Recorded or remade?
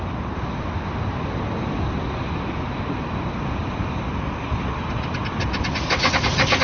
recorded